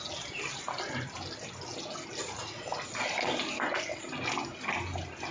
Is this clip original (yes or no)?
yes